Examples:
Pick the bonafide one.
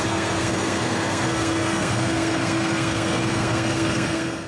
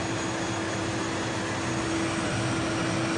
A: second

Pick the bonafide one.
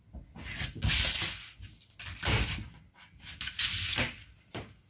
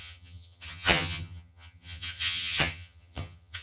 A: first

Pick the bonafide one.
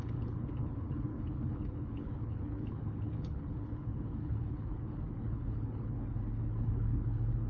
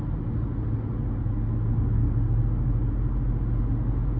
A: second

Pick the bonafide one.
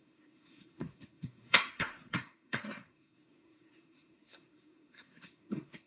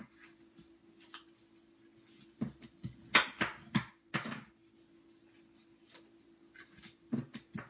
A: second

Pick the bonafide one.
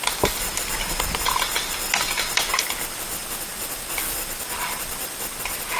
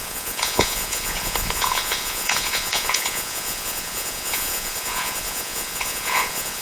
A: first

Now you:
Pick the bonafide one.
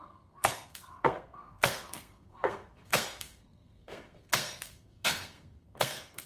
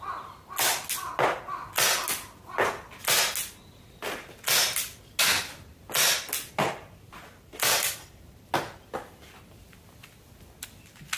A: second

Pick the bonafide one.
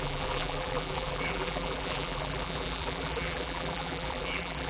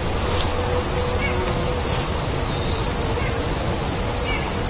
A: second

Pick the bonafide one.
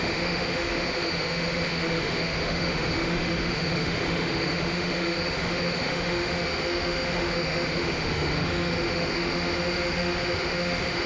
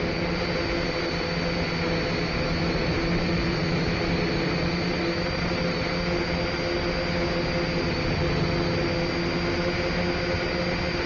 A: second